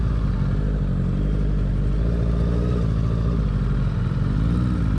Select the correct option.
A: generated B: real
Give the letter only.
B